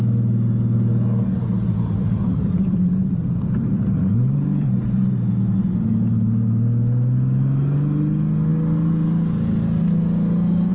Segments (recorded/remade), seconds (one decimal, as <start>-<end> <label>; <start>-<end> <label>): 0.0-1.7 recorded; 1.7-5.3 remade; 5.3-10.7 recorded